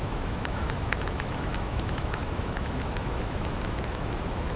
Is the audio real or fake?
fake